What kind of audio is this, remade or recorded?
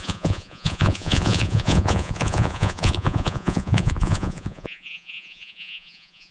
remade